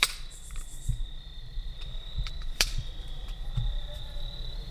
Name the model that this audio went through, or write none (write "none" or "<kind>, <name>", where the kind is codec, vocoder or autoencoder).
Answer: vocoder, BigVGAN v2